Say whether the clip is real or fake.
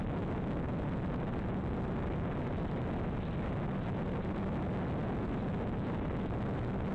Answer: real